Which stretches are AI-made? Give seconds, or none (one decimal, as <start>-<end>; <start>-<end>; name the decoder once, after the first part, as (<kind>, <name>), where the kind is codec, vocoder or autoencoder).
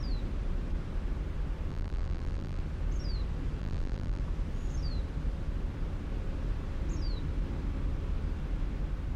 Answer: 1.7-2.6 (vocoder, BigVGAN v2); 3.6-4.2